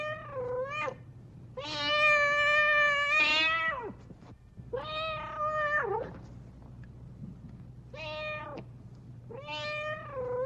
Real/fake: real